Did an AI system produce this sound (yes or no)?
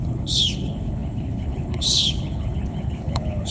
yes